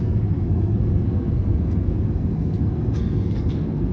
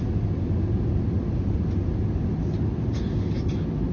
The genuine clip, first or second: second